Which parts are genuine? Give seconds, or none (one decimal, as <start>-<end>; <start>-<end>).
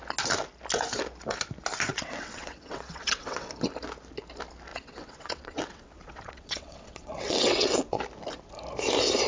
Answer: 0.0-1.9; 3.5-4.7; 8.0-9.3